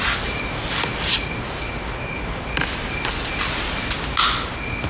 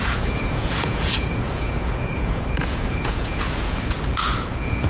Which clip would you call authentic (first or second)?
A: first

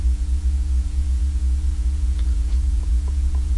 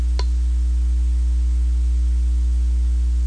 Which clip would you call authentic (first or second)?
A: second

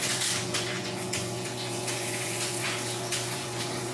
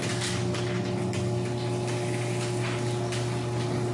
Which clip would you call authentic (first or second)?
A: second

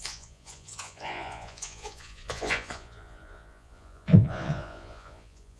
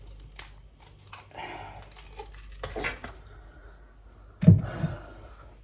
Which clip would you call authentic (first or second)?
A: second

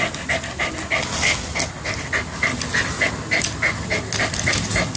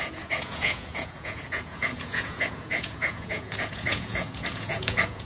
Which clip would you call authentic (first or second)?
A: first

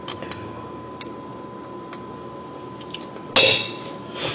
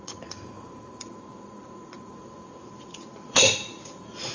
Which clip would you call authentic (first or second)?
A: first